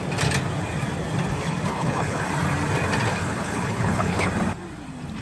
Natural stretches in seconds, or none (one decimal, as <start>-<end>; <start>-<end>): 0.0-1.7; 2.2-3.1; 4.3-5.2